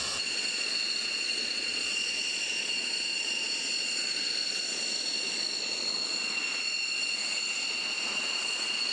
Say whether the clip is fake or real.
fake